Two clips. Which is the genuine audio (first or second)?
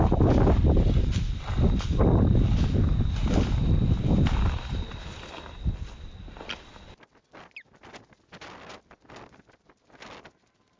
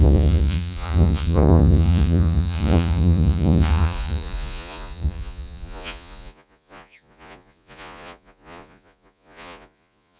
first